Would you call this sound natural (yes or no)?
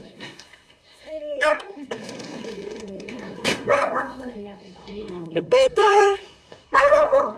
no